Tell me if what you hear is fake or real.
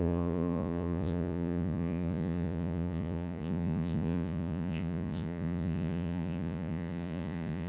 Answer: fake